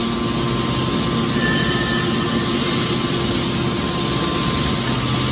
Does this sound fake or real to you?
real